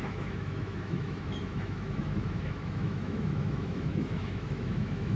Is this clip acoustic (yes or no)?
no